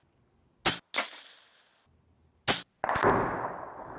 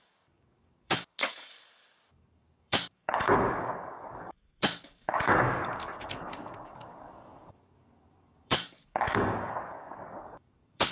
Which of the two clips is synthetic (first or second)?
second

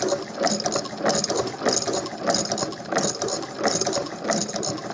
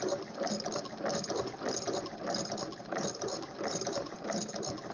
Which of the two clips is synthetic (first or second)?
second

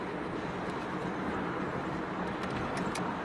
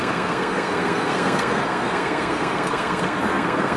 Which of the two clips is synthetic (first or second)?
second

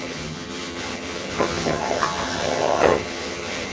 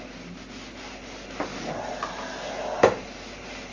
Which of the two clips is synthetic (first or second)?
first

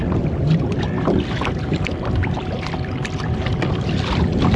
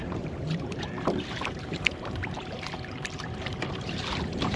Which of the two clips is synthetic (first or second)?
second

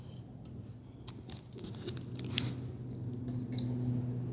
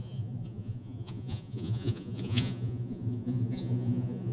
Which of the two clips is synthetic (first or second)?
second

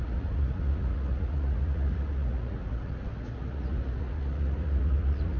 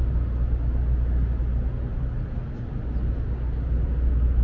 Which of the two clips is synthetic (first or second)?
first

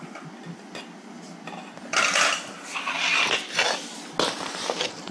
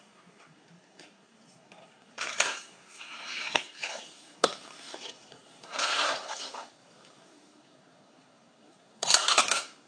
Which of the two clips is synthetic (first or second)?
second